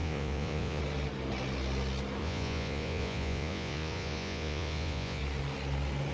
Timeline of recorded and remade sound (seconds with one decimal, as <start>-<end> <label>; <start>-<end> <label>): 0.0-0.8 remade; 0.8-2.2 recorded; 2.2-5.2 remade; 5.2-6.1 recorded